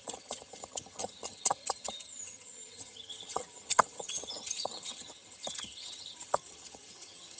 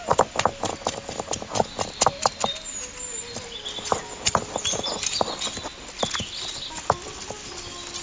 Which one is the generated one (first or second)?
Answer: first